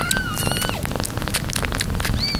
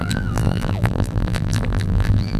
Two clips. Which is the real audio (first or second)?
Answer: first